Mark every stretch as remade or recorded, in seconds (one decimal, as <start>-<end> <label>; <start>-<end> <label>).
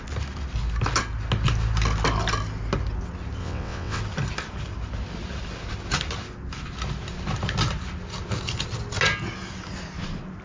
0.0-3.4 recorded; 3.4-4.0 remade; 4.0-10.4 recorded